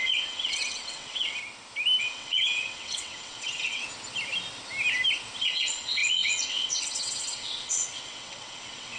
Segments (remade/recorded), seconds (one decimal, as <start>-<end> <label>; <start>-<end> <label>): 0.0-1.4 remade; 1.4-2.0 recorded; 2.0-3.8 remade; 3.8-5.4 recorded; 5.4-9.0 remade